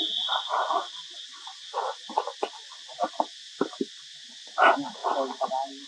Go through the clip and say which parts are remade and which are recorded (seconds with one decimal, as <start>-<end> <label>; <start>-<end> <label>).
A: 0.0-5.9 recorded